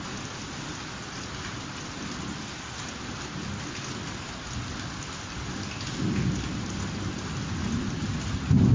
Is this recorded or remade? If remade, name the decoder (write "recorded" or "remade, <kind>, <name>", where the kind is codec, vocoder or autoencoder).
recorded